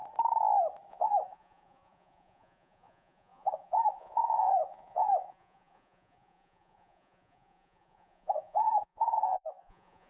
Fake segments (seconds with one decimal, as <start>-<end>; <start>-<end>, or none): 0.9-10.1